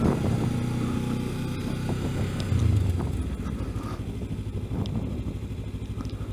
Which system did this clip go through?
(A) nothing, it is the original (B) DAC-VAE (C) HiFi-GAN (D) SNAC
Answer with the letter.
A